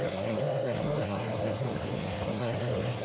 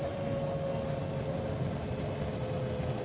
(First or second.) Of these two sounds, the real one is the second